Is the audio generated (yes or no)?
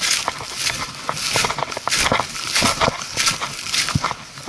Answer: no